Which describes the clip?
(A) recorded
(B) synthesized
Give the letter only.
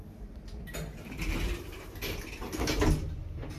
A